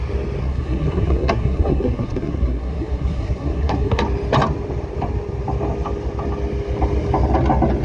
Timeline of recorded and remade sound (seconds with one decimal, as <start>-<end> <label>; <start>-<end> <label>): 0.0-0.4 recorded; 0.4-4.0 remade; 4.0-7.8 recorded

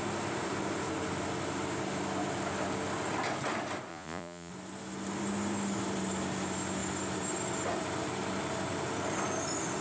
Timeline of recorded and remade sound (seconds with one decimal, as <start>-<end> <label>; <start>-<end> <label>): 0.0-3.9 recorded; 3.9-4.5 remade; 4.5-9.8 recorded

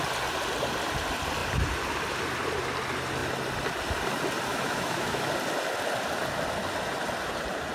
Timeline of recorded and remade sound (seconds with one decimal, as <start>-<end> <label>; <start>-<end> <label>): 0.0-4.5 recorded; 4.5-5.3 remade; 5.3-7.7 recorded

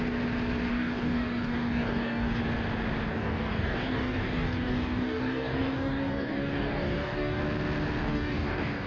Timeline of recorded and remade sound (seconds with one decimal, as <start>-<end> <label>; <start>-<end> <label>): 0.0-0.7 recorded; 0.7-2.4 remade; 2.4-3.1 recorded; 3.1-7.4 remade; 7.4-8.0 recorded; 8.0-8.9 remade

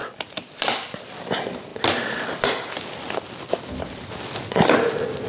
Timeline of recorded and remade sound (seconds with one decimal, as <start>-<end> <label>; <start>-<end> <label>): 0.0-0.6 recorded; 0.6-1.7 remade; 1.7-5.3 recorded

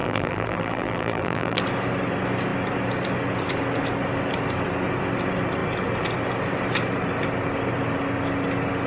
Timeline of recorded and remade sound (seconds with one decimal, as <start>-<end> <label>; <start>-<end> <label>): 0.0-1.6 remade; 1.6-8.9 recorded

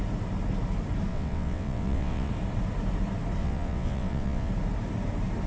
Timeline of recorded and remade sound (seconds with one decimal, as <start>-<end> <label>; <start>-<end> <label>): 0.0-1.1 recorded; 1.1-2.3 remade; 2.3-3.4 recorded; 3.4-4.5 remade; 4.5-5.5 recorded